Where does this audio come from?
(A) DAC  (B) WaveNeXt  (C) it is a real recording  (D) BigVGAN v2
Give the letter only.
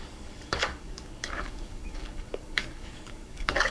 A